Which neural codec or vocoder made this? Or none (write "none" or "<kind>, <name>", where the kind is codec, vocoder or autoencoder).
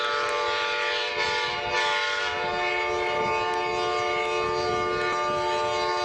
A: none